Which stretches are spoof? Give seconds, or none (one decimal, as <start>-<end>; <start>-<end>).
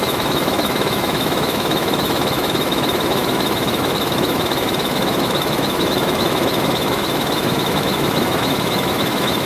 0.0-9.5